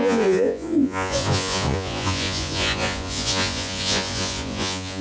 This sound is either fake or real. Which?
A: fake